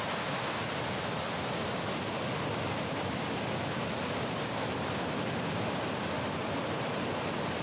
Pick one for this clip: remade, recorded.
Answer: recorded